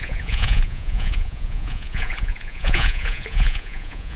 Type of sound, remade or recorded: remade